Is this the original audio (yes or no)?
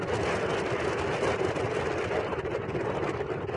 yes